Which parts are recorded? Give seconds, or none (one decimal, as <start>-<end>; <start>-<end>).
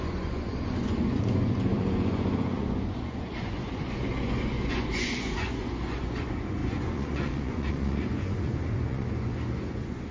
none